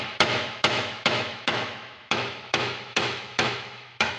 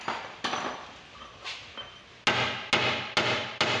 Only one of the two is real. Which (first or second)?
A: second